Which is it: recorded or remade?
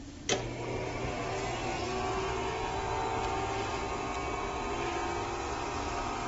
recorded